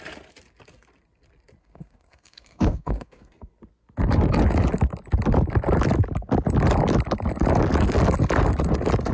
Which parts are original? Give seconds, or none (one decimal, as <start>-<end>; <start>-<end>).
0.0-1.6; 3.5-9.1